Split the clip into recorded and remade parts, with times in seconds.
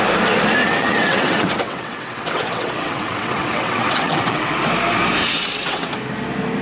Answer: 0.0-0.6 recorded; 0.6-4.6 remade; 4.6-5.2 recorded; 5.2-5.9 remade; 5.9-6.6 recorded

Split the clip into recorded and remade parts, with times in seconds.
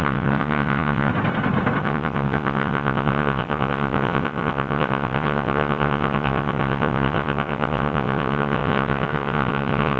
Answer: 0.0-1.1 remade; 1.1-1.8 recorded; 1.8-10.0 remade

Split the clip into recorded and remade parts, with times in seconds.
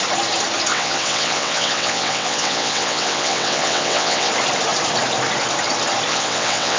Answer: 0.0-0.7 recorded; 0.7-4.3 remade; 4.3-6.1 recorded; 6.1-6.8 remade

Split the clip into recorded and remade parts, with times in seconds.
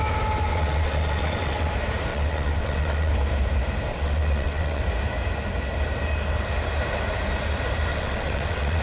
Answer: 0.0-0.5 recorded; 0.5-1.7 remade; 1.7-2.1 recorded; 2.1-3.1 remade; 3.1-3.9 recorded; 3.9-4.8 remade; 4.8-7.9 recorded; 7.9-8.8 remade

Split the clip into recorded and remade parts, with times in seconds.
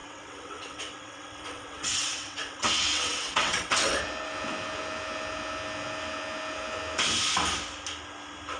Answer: 0.0-4.0 remade; 4.0-8.6 recorded